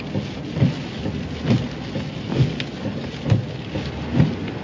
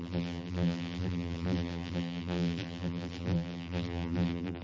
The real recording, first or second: first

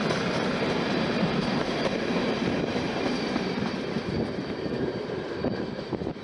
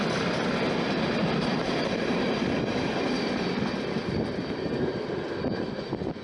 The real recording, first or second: second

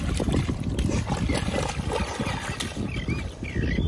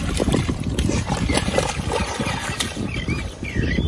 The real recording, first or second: first